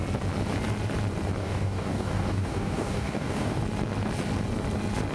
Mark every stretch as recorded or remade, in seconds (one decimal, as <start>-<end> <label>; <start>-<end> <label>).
0.0-1.4 recorded; 1.4-3.6 remade; 3.6-5.1 recorded